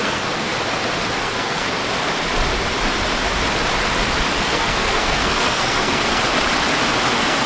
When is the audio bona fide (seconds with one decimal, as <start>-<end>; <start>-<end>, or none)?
0.5-1.2; 1.8-4.4; 6.2-7.1